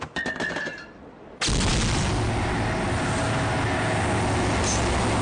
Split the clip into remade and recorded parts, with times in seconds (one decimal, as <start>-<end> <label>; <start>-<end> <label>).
0.0-5.2 recorded